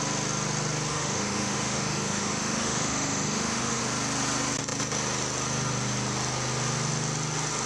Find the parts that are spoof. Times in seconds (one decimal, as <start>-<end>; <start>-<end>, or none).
0.9-3.8